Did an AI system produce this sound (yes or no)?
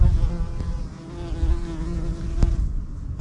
no